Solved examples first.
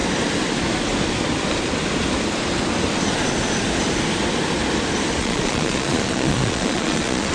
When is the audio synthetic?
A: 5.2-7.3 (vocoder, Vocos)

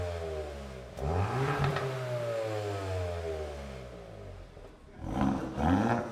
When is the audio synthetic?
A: none

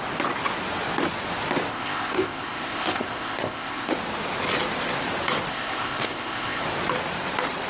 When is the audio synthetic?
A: 1.7-3.9 (codec, ZipCodec); 5.5-6.6